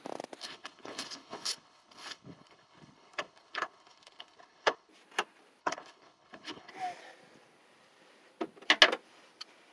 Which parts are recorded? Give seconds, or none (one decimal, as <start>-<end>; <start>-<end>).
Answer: 0.0-0.4; 4.9-5.6; 6.7-9.7